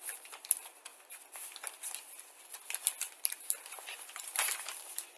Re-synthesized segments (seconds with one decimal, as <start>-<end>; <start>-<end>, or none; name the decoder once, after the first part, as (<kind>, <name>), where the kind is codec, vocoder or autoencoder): 0.9-3.6 (vocoder, BigVGAN v2)